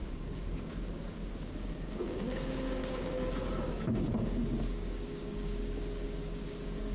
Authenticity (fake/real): fake